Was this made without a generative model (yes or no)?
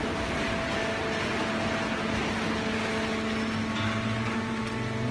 yes